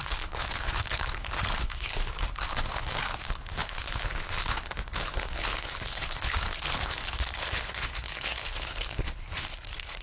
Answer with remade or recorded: remade